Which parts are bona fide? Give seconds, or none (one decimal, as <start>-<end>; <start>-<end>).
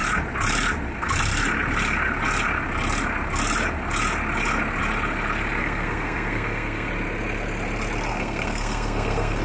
0.0-5.6; 6.9-8.1